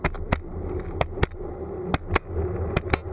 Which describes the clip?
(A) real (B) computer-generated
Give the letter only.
A